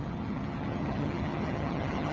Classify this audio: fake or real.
fake